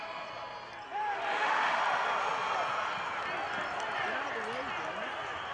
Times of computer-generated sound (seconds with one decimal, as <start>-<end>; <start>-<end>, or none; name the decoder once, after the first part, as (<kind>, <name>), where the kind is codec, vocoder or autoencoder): 1.3-1.8 (autoencoder, DAC-VAE)